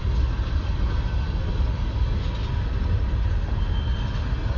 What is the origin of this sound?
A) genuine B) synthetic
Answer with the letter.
A